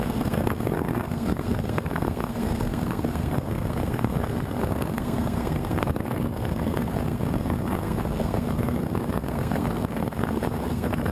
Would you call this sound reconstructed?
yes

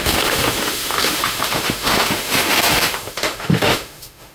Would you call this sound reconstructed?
yes